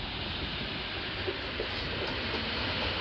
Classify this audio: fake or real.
real